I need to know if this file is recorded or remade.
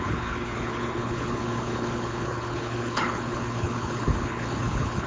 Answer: remade